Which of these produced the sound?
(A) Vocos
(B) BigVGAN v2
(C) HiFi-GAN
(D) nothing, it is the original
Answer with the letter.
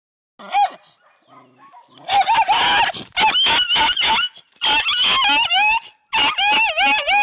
D